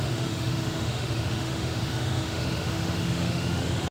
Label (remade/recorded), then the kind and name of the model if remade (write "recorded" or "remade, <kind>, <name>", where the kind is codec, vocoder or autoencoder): remade, autoencoder, DAC-VAE